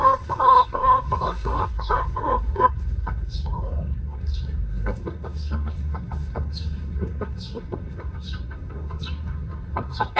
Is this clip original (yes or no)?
no